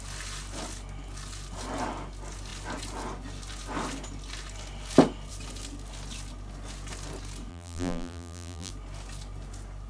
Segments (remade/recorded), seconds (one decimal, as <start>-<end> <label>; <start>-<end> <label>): 0.0-7.5 recorded; 7.5-8.7 remade; 8.7-9.9 recorded